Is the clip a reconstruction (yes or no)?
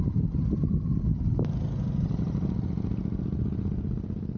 no